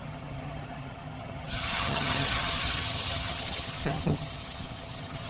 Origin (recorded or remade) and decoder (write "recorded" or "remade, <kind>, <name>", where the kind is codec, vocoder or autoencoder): remade, vocoder, HiFi-GAN